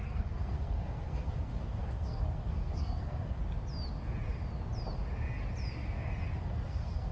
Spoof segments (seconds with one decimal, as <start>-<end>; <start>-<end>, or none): 0.0-3.4; 6.4-7.1